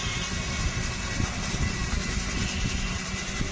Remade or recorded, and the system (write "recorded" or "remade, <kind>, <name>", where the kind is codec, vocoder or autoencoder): recorded